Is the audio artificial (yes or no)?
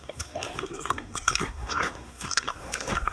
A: yes